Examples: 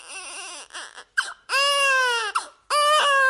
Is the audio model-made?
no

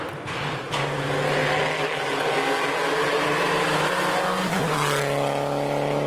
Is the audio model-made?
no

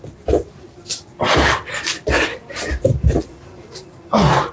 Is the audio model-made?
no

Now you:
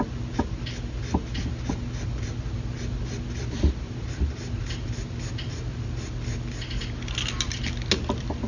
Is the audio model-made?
no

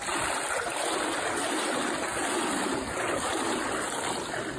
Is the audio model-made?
no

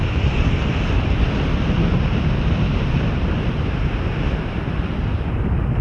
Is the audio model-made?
no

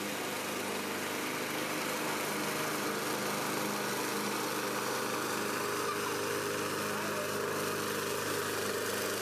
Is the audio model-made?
no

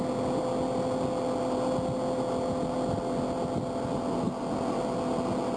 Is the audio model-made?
no